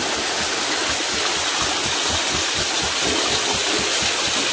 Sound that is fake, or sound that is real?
real